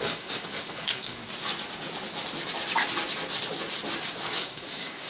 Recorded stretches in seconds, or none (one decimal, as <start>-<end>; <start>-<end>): 1.2-4.3